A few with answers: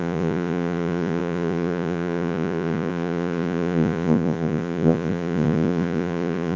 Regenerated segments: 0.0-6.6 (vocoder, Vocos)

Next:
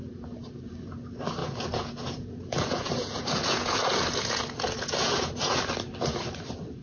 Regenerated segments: 1.4-5.5 (vocoder, Vocos)

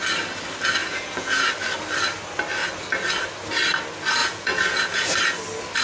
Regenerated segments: 0.8-1.5 (vocoder, Vocos); 4.2-5.1

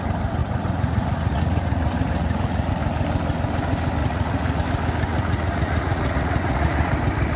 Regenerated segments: 0.4-2.7 (vocoder, Vocos); 4.0-4.6; 5.1-6.9

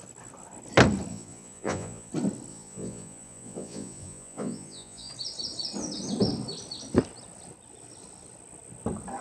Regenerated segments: 1.1-2.1 (vocoder, Vocos); 2.5-5.1

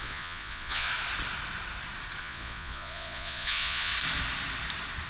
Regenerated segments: 0.0-0.9 (vocoder, Vocos); 2.2-3.9